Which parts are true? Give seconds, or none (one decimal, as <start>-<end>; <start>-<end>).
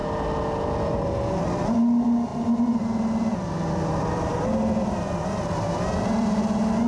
0.0-2.3; 6.4-6.9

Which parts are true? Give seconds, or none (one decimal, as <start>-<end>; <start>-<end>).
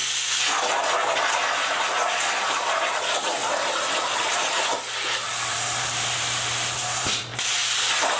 0.0-1.6; 3.4-4.3; 4.7-5.5; 7.3-8.2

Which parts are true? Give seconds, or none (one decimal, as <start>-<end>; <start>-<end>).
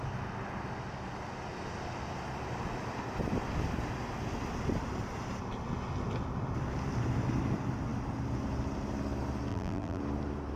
0.0-9.5; 10.0-10.6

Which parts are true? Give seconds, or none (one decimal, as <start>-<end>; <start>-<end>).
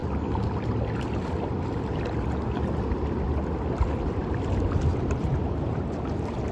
0.0-4.9; 5.8-6.5